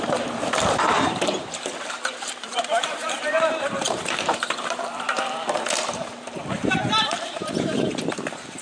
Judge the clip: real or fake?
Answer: fake